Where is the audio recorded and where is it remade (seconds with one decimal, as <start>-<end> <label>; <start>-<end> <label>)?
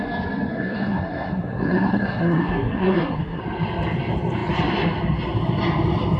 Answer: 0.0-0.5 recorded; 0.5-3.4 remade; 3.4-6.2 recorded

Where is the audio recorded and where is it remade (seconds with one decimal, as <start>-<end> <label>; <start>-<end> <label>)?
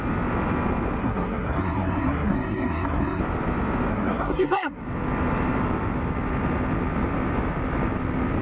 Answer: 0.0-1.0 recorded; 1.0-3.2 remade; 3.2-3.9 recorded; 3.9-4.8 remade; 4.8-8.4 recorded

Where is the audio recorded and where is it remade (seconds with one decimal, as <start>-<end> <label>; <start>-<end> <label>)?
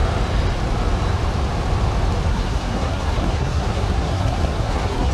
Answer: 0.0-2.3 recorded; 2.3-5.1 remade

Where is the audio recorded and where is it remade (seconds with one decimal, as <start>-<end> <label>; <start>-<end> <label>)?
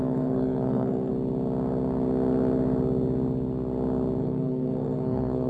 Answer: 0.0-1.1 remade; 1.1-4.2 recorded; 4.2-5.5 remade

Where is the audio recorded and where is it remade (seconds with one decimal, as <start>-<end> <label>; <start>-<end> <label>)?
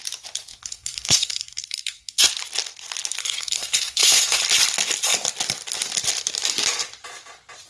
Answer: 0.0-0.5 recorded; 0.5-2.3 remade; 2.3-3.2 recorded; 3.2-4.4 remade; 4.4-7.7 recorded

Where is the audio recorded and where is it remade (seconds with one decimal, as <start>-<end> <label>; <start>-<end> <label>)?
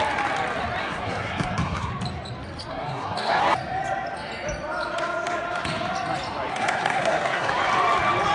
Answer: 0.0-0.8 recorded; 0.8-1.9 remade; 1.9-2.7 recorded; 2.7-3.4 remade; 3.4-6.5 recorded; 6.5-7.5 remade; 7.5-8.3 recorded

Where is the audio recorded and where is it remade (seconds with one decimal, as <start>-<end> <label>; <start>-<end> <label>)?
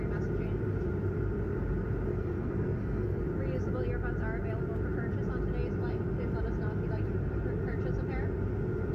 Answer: 0.0-2.1 recorded; 2.1-3.2 remade; 3.2-8.9 recorded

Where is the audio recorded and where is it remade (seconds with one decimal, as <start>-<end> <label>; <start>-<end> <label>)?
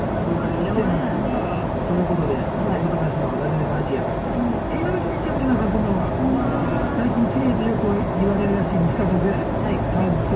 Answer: 0.0-10.4 recorded